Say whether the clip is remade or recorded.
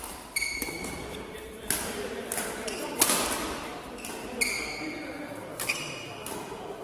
recorded